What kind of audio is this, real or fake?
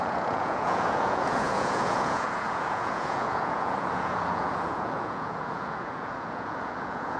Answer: fake